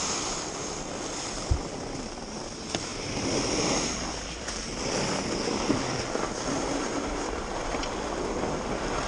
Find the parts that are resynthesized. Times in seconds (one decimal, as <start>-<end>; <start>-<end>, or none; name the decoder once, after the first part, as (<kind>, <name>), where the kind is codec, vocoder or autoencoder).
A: none